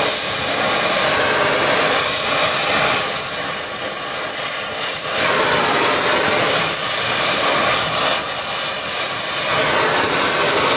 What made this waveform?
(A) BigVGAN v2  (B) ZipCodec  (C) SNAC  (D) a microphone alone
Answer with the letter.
D